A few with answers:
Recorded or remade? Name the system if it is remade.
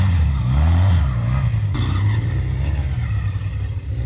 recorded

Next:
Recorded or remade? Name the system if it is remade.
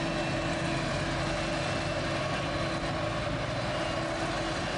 recorded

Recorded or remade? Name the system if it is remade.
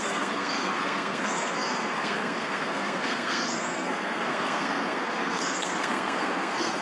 remade, codec, SNAC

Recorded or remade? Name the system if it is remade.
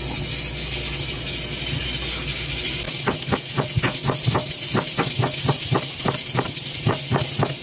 recorded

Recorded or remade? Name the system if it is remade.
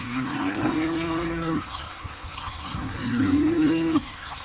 remade, codec, SNAC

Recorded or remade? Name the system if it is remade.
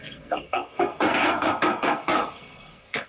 remade, codec, SNAC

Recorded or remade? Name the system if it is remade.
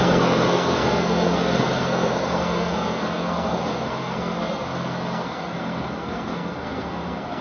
remade, codec, SNAC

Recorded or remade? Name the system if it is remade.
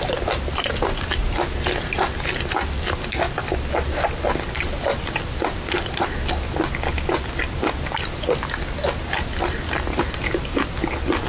recorded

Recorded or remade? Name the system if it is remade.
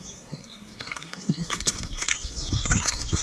remade, codec, SNAC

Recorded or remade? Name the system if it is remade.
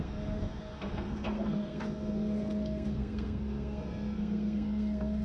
remade, codec, SNAC